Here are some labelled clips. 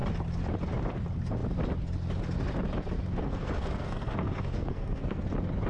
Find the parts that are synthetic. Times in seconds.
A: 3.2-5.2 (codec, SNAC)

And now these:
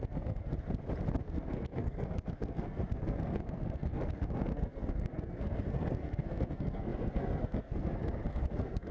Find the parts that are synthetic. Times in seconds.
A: 0.0-0.5 (codec, SNAC); 1.1-8.9